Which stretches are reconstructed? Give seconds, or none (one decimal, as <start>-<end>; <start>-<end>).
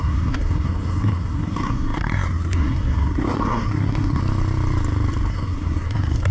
0.0-4.2; 5.3-6.3